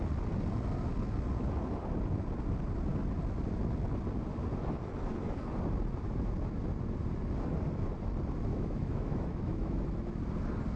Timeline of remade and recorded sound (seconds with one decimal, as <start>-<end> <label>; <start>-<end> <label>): 0.0-8.5 recorded; 8.5-9.9 remade; 9.9-10.8 recorded